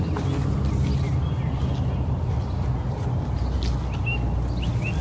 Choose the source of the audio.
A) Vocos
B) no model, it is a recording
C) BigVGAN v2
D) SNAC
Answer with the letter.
B